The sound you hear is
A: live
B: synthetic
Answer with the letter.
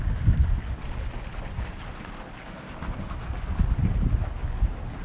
A